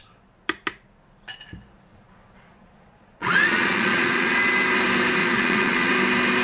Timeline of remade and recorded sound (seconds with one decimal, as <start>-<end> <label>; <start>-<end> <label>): 0.0-1.9 recorded; 1.9-4.4 remade; 4.4-5.2 recorded; 5.2-5.9 remade; 5.9-6.4 recorded